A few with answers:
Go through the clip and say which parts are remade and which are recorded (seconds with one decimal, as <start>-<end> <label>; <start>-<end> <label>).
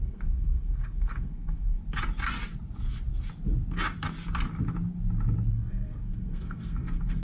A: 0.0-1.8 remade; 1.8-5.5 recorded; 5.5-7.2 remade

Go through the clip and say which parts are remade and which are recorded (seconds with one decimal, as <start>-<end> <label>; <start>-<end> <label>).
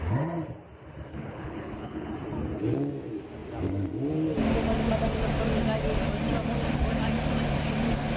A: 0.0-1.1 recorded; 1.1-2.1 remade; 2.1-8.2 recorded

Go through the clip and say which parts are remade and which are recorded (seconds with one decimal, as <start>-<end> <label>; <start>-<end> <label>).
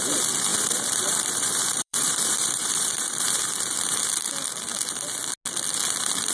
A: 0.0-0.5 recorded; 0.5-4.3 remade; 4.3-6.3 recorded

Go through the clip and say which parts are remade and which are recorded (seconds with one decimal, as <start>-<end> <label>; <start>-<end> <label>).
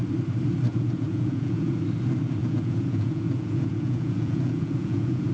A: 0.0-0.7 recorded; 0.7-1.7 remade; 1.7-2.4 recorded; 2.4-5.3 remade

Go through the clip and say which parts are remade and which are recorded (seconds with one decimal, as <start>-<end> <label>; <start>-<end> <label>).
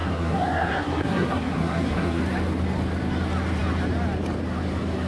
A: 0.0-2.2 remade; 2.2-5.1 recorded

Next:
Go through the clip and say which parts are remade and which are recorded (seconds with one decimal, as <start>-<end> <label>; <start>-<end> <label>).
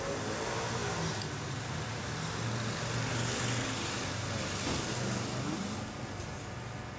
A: 0.0-7.0 recorded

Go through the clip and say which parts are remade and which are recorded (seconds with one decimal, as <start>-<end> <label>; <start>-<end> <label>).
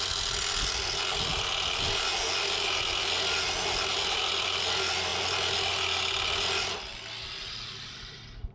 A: 0.0-8.5 recorded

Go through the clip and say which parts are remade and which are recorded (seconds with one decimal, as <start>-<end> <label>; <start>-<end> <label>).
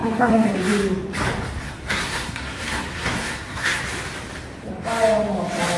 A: 0.0-0.6 remade; 0.6-1.6 recorded; 1.6-3.8 remade; 3.8-5.8 recorded